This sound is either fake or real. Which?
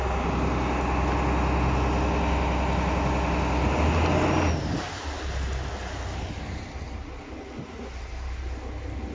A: real